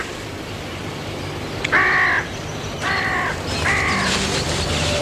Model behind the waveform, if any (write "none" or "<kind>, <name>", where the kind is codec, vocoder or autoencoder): vocoder, BigVGAN v2